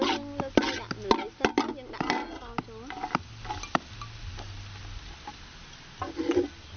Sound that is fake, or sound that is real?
real